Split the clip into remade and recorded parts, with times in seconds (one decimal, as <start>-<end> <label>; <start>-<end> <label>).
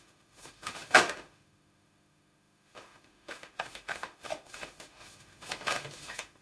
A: 0.0-6.4 remade